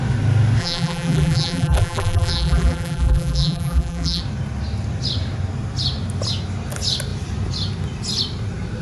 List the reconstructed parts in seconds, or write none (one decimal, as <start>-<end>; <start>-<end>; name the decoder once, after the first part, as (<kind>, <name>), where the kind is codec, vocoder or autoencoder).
0.6-4.2 (vocoder, BigVGAN v2)